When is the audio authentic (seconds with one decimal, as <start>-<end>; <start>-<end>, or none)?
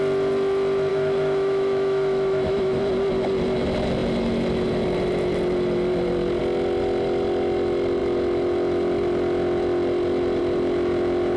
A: 0.0-0.9; 2.8-11.4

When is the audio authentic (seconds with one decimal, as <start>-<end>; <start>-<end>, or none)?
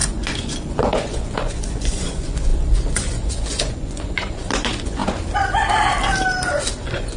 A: 5.0-6.8